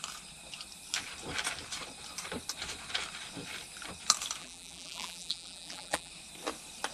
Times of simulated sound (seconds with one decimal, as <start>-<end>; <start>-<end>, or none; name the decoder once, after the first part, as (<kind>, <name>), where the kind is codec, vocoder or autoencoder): 4.4-6.1 (vocoder, BigVGAN v2)